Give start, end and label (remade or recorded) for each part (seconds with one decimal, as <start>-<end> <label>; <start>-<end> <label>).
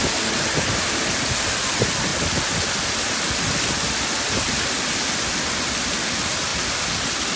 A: 0.0-7.4 recorded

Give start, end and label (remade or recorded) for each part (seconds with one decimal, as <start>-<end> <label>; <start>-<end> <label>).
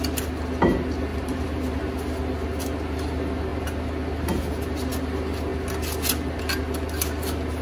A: 0.0-1.1 recorded; 1.1-1.8 remade; 1.8-7.6 recorded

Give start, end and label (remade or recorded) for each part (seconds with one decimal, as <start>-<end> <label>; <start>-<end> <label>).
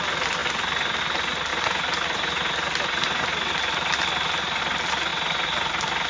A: 0.0-0.4 recorded; 0.4-1.0 remade; 1.0-1.5 recorded; 1.5-4.6 remade; 4.6-5.1 recorded; 5.1-6.1 remade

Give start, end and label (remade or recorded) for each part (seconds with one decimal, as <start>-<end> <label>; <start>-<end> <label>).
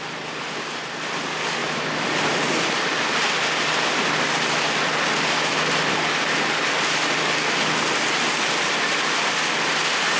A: 0.0-1.6 recorded; 1.6-2.2 remade; 2.2-10.2 recorded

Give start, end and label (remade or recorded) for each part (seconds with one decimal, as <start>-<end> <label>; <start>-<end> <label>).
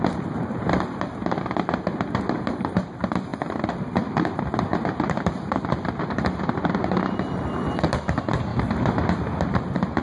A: 0.0-1.2 remade; 1.2-2.6 recorded; 2.6-8.5 remade; 8.5-9.4 recorded; 9.4-10.0 remade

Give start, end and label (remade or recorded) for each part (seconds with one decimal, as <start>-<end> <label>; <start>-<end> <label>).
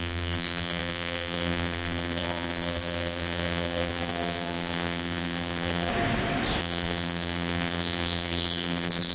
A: 0.0-5.9 remade; 5.9-6.6 recorded; 6.6-9.1 remade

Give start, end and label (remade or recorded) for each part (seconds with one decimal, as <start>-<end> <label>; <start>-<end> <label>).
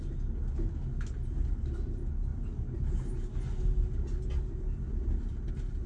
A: 0.0-5.9 recorded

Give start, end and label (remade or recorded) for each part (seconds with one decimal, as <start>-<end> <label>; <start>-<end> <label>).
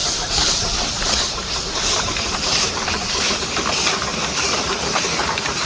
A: 0.0-3.4 remade; 3.4-4.1 recorded; 4.1-4.7 remade; 4.7-5.7 recorded